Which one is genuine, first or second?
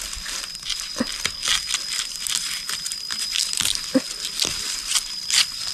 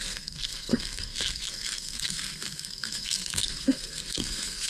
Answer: first